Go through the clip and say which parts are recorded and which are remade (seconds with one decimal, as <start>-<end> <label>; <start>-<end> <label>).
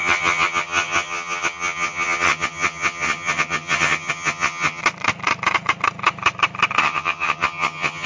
0.0-4.8 remade; 4.8-6.8 recorded; 6.8-8.1 remade